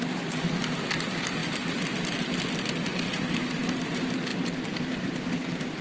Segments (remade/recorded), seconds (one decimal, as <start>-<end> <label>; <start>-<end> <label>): 0.0-5.8 recorded